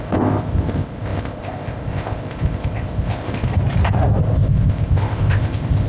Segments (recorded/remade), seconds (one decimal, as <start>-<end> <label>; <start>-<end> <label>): 0.0-3.5 remade; 3.5-4.2 recorded; 4.2-5.9 remade

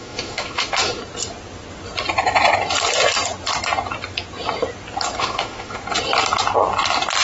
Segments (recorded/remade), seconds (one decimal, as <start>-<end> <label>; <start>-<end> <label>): 0.0-1.0 remade; 1.0-5.2 recorded; 5.2-5.8 remade; 5.8-7.2 recorded

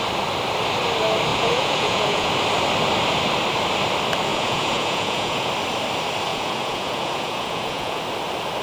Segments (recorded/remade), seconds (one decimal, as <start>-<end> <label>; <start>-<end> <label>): 0.0-1.3 recorded; 1.3-2.3 remade; 2.3-4.3 recorded; 4.3-5.5 remade; 5.5-6.3 recorded; 6.3-8.0 remade; 8.0-8.6 recorded

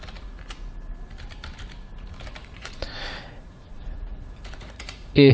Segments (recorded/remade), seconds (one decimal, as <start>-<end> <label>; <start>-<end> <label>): 0.0-2.4 recorded; 2.4-5.3 remade

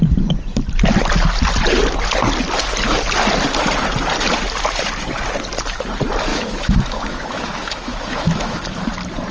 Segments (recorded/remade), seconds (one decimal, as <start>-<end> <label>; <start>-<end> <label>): 0.0-6.3 recorded; 6.3-8.6 remade; 8.6-9.3 recorded

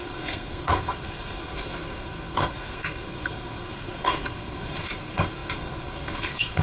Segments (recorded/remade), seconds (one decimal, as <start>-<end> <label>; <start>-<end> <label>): 0.0-6.6 remade

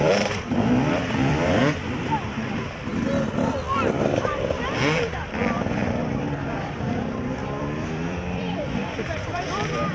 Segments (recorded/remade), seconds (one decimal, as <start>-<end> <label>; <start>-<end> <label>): 0.0-2.9 remade; 2.9-3.5 recorded; 3.5-9.9 remade